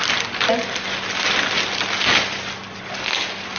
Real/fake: real